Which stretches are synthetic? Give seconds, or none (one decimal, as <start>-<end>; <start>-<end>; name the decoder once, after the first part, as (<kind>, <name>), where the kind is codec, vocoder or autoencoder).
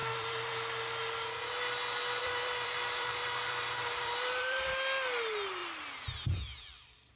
0.0-0.5 (vocoder, BigVGAN v2); 2.2-4.7